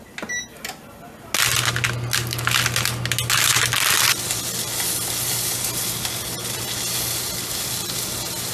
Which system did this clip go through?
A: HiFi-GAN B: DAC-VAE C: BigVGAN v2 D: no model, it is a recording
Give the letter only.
D